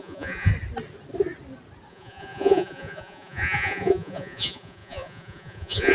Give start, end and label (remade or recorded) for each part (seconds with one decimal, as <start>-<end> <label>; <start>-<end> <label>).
0.0-0.5 remade; 0.5-1.9 recorded; 1.9-5.9 remade